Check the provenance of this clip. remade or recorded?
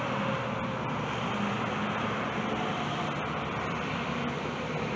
recorded